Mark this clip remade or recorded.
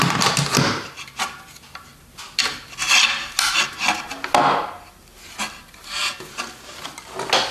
recorded